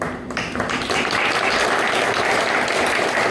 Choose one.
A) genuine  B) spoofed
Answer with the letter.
A